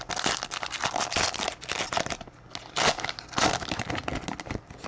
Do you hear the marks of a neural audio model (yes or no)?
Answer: no